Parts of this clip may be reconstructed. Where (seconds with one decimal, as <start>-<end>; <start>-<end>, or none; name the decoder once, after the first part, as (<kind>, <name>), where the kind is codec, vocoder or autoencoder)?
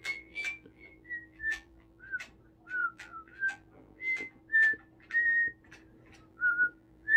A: 0.0-2.0 (vocoder, BigVGAN v2); 2.8-4.4; 6.3-7.2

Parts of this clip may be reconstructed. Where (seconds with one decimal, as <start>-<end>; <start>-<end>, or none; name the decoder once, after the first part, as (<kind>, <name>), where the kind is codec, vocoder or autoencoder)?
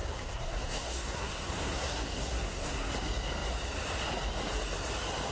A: 0.0-2.9 (codec, SNAC)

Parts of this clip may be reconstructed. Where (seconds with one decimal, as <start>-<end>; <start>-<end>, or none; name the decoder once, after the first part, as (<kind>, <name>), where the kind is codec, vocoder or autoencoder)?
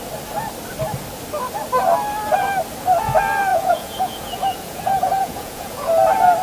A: 3.5-5.9 (vocoder, Vocos)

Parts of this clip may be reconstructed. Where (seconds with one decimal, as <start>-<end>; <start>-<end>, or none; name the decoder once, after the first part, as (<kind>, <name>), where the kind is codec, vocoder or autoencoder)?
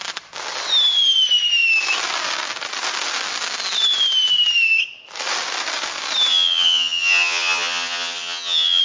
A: 6.3-8.8 (vocoder, HiFi-GAN)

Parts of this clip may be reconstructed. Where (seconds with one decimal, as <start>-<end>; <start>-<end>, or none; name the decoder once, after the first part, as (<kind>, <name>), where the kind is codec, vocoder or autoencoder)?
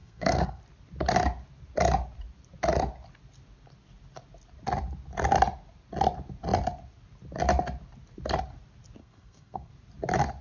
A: 0.0-0.6 (codec, SNAC); 9.0-9.7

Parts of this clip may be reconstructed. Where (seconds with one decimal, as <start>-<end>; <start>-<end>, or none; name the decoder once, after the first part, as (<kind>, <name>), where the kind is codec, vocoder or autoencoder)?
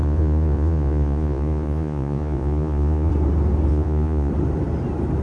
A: 0.0-3.1 (vocoder, Vocos); 3.7-4.3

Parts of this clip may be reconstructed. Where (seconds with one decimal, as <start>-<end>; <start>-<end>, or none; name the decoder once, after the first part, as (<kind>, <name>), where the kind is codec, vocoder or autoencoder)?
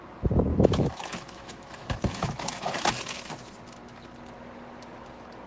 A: 0.5-2.7 (autoencoder, DAC-VAE)